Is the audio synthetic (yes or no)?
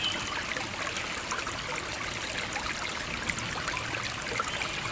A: no